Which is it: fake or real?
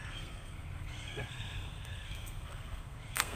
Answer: fake